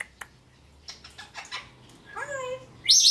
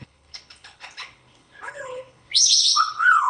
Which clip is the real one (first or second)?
first